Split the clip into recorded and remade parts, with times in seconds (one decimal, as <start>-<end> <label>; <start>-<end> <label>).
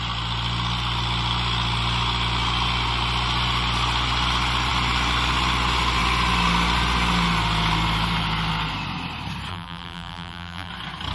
0.0-9.5 recorded; 9.5-10.7 remade; 10.7-11.1 recorded